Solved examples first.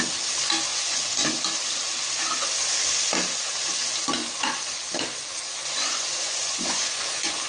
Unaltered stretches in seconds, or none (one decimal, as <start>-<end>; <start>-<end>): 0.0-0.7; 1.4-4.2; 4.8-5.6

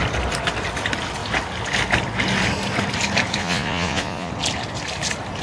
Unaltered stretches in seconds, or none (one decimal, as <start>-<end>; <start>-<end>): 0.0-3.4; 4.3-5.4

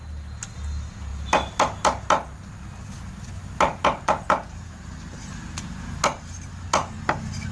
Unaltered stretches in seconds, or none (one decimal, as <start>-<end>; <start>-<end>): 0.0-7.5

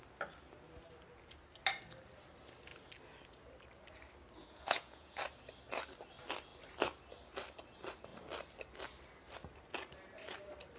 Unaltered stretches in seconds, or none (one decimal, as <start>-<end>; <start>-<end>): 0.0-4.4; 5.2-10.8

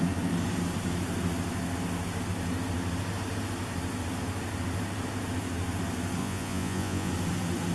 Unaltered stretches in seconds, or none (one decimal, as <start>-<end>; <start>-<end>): 0.0-6.2; 7.1-7.7